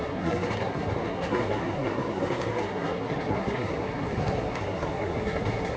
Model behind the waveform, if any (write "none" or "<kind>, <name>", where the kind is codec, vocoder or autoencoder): codec, SNAC